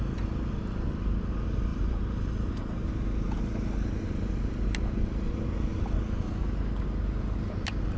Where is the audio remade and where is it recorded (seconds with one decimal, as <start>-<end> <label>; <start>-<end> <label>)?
0.0-1.7 recorded; 1.7-3.6 remade; 3.6-8.0 recorded